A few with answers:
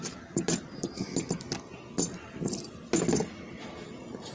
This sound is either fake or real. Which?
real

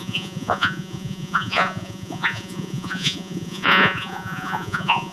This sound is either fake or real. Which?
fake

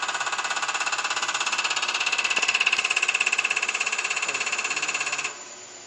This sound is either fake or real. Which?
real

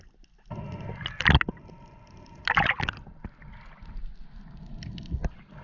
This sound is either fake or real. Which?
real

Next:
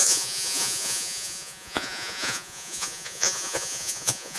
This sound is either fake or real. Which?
fake